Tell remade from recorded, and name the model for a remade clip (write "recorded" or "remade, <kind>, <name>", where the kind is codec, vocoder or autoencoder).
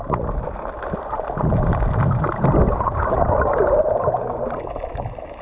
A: recorded